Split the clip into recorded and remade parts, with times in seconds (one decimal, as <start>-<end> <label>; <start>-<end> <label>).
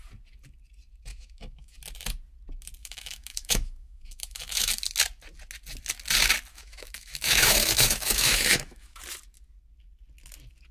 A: 0.0-1.1 recorded; 1.1-1.8 remade; 1.8-2.8 recorded; 2.8-4.7 remade; 4.7-6.5 recorded; 6.5-9.0 remade; 9.0-10.7 recorded